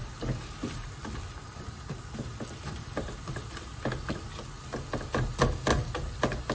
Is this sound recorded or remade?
recorded